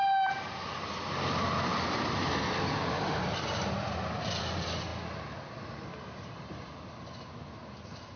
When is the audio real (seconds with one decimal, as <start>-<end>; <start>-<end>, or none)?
0.0-8.2